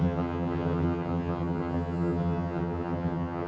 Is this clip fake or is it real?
fake